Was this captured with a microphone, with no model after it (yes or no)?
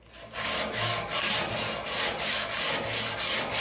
yes